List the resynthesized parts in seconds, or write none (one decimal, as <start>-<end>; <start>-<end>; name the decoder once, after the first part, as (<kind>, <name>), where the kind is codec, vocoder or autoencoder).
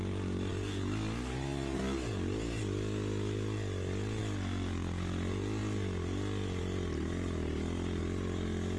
none